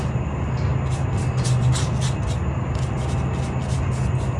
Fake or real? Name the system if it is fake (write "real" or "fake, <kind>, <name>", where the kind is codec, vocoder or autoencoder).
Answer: real